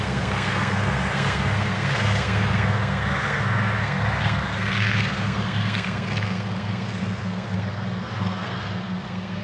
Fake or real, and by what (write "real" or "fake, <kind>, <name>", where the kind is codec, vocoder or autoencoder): fake, codec, SNAC